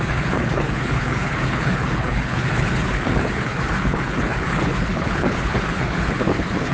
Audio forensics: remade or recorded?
remade